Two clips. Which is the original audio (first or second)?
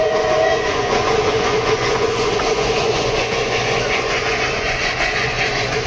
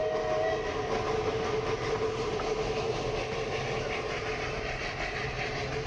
second